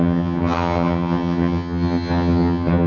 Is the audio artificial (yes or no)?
yes